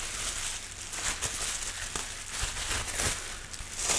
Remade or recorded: recorded